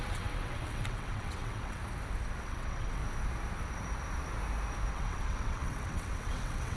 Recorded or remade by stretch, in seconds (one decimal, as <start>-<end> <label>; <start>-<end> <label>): 0.0-1.8 remade; 1.8-2.4 recorded; 2.4-3.0 remade; 3.0-4.9 recorded; 4.9-6.8 remade